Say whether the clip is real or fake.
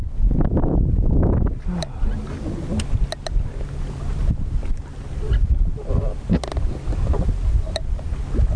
real